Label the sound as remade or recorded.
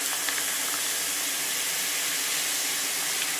recorded